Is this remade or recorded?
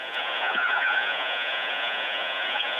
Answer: remade